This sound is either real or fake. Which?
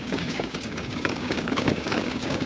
fake